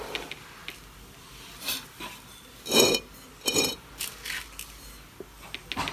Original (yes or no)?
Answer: yes